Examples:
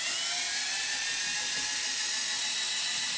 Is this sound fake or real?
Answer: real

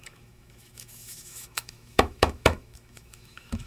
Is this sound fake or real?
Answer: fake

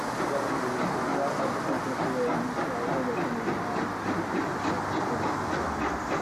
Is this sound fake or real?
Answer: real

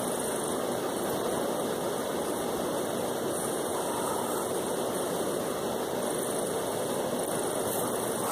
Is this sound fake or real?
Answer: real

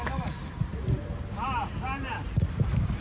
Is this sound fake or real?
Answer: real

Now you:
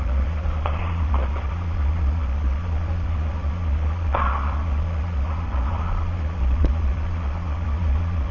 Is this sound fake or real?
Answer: fake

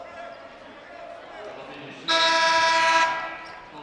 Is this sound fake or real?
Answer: real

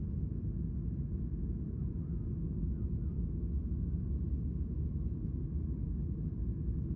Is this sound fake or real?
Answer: real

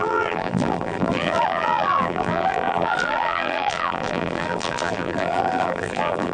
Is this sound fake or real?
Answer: fake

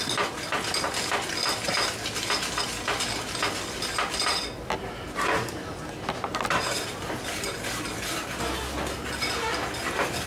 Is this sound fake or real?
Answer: real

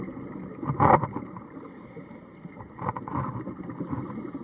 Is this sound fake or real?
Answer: real